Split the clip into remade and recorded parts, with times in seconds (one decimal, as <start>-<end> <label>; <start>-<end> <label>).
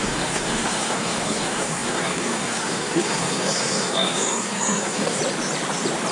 0.0-5.2 remade; 5.2-6.1 recorded